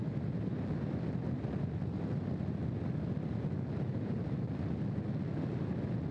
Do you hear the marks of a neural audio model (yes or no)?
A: no